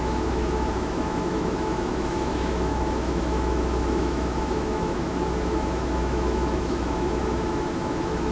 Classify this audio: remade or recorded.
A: remade